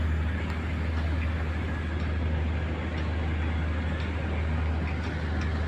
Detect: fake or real real